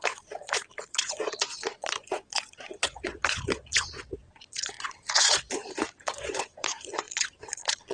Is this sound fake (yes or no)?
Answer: yes